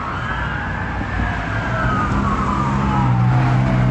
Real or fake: real